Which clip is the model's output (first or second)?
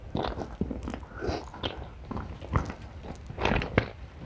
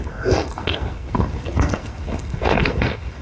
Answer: second